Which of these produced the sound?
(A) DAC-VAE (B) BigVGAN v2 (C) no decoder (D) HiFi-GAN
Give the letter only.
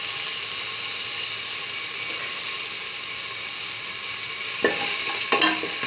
C